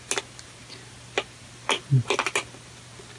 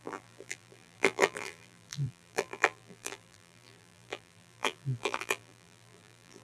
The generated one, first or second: second